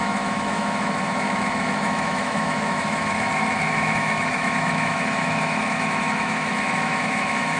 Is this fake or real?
fake